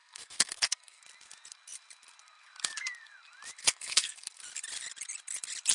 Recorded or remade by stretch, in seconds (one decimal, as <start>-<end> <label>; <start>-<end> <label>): 0.0-1.0 remade; 1.0-3.6 recorded; 3.6-4.4 remade; 4.4-5.7 recorded